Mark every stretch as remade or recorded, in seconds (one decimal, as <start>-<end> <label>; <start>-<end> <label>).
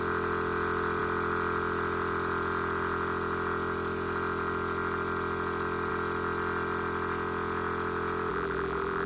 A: 0.0-8.3 recorded; 8.3-9.1 remade